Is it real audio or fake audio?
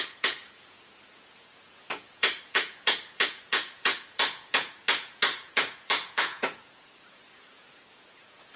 fake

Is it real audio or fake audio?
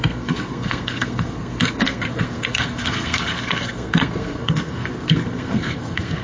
fake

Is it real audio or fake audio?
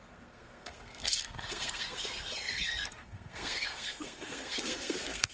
fake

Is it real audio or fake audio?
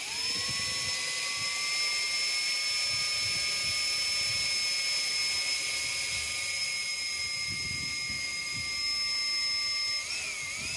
real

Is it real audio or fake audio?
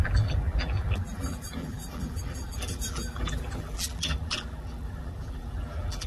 fake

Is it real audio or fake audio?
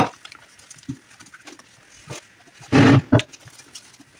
real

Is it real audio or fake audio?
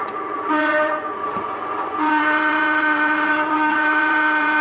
fake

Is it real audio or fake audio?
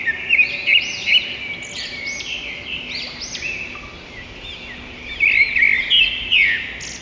real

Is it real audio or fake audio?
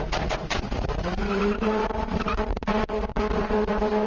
fake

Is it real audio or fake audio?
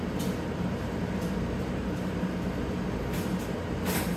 fake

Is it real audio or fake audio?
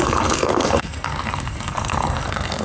fake